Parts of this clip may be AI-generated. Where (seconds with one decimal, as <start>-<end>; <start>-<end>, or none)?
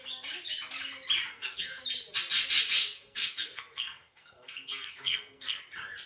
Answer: 1.3-1.8; 2.8-5.6